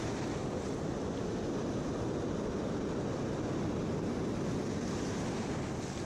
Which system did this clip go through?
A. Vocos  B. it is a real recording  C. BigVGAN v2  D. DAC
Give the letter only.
B